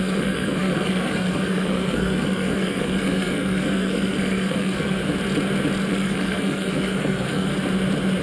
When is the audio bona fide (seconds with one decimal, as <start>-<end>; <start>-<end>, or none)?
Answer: 5.0-5.9; 7.5-8.2